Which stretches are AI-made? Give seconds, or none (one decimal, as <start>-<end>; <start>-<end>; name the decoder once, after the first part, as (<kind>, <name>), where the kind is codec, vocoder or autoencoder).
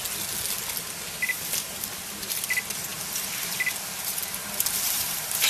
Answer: 4.4-5.5 (vocoder, BigVGAN v2)